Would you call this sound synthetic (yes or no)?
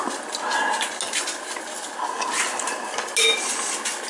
no